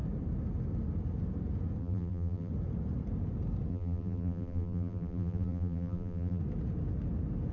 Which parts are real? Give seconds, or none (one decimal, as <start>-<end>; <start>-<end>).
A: 0.0-1.8; 2.5-3.7; 6.4-7.5